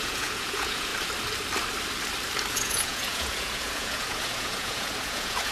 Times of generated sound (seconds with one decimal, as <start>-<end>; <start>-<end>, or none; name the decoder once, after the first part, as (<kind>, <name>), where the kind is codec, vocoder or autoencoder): 0.0-0.9 (vocoder, Vocos); 2.5-5.5